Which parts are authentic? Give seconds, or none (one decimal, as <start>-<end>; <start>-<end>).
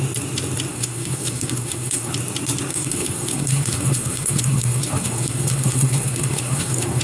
0.0-0.7; 2.1-2.7